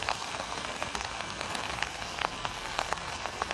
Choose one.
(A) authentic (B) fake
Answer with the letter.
B